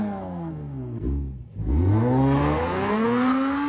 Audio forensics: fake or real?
fake